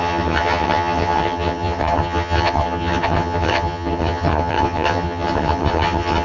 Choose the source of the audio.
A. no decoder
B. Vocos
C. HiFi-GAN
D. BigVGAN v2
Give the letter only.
C